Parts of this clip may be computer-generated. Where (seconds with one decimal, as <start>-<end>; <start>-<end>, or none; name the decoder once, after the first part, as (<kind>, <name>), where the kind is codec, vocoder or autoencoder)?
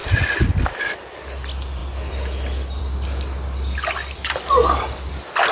none